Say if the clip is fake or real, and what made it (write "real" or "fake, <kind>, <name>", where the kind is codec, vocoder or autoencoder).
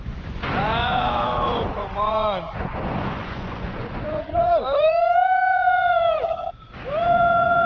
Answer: fake, vocoder, Vocos